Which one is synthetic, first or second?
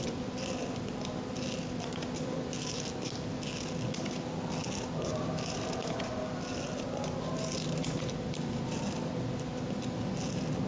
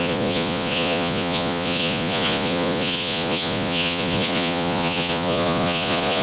second